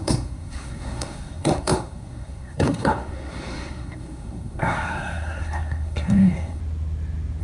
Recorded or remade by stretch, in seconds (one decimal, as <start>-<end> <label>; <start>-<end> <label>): 0.0-6.6 remade; 6.6-7.4 recorded